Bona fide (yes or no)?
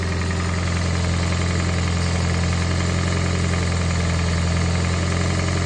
yes